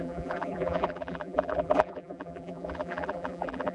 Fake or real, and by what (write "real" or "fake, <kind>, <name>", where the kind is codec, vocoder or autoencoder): fake, vocoder, BigVGAN v2